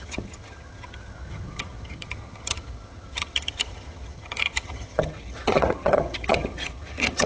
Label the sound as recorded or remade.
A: remade